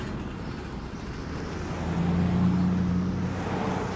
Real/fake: real